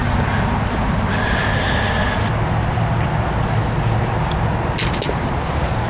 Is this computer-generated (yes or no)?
no